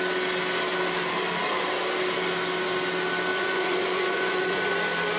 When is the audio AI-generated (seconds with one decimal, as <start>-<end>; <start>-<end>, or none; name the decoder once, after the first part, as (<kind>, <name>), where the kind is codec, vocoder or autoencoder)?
3.3-4.7 (vocoder, Vocos)